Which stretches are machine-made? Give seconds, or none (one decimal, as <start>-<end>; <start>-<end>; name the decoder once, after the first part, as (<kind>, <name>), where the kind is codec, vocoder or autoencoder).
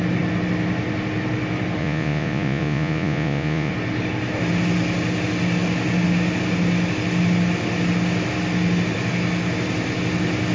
1.8-3.7 (vocoder, Vocos)